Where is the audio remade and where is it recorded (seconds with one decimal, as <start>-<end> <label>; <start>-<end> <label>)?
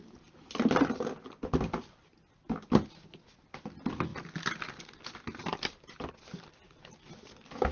0.0-7.7 recorded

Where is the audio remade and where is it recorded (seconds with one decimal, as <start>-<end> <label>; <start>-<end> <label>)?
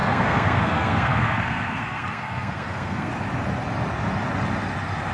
0.0-3.1 remade; 3.1-5.1 recorded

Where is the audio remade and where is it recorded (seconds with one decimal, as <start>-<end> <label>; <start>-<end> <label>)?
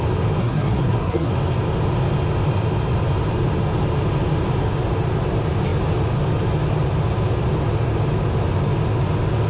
0.0-0.4 recorded; 0.4-1.3 remade; 1.3-9.5 recorded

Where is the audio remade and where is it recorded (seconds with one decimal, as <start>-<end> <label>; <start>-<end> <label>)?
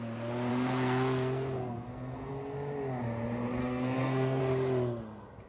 0.0-0.5 recorded; 0.5-2.3 remade; 2.3-3.6 recorded; 3.6-4.4 remade; 4.4-5.5 recorded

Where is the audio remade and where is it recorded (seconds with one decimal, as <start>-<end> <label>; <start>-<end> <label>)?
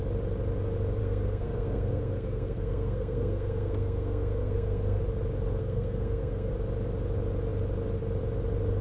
0.0-1.0 recorded; 1.0-5.0 remade; 5.0-5.6 recorded; 5.6-6.5 remade; 6.5-8.8 recorded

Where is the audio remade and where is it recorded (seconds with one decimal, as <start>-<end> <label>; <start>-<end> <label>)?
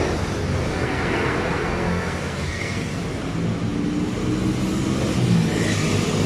0.0-0.7 recorded; 0.7-3.0 remade; 3.0-6.3 recorded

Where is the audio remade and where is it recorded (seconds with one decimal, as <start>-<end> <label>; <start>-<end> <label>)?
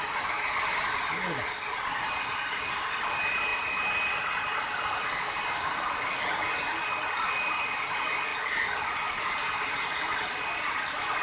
0.0-11.2 recorded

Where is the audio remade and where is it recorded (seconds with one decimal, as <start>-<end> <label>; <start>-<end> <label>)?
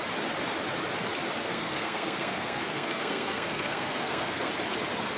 0.0-1.4 recorded; 1.4-4.5 remade; 4.5-5.2 recorded